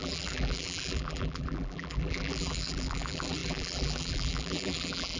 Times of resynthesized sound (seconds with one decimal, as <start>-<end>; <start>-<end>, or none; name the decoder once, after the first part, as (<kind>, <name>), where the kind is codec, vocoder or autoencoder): 0.0-5.2 (vocoder, BigVGAN v2)